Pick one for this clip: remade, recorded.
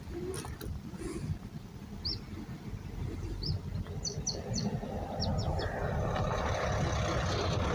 recorded